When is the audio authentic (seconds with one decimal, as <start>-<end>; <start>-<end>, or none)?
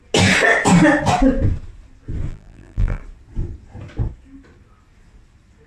0.0-2.3; 3.0-5.7